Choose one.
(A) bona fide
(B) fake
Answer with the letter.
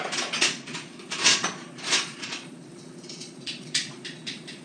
B